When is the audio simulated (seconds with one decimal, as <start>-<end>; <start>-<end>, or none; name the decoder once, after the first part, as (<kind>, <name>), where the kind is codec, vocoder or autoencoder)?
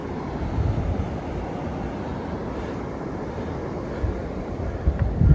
none